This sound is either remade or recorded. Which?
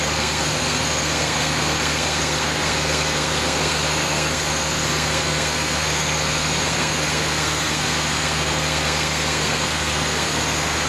remade